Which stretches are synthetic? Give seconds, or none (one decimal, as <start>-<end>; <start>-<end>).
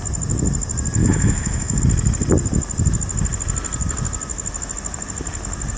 1.0-1.8